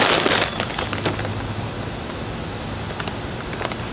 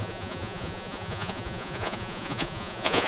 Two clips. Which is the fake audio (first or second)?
second